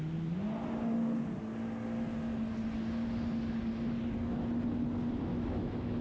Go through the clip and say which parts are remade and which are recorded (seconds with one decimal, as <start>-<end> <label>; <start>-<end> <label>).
0.0-5.3 recorded; 5.3-6.0 remade